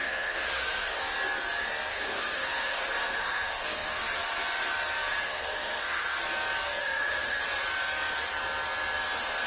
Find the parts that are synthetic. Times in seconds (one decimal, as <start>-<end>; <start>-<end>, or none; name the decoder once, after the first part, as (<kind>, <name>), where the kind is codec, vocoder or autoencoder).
0.0-1.0 (codec, SNAC); 1.9-4.0; 5.1-6.2; 6.8-7.4